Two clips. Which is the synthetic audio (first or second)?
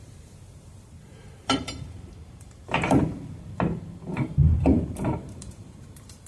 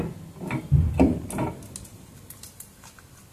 first